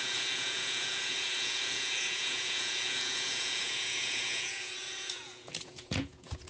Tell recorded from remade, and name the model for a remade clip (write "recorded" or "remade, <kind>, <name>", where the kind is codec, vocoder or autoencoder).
remade, vocoder, Vocos